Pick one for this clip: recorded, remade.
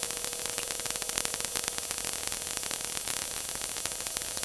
recorded